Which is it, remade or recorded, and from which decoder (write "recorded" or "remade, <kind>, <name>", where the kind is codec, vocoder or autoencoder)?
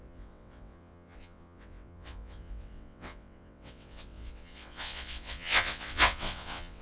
remade, vocoder, WaveNeXt